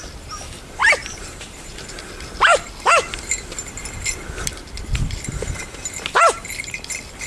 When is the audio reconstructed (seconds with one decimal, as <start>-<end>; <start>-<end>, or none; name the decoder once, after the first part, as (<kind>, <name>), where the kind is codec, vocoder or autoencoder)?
0.8-2.0 (vocoder, BigVGAN v2)